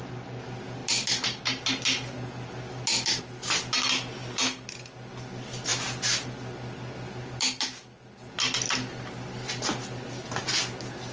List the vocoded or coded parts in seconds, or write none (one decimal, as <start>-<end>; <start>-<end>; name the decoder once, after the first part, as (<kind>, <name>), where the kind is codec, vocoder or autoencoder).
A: none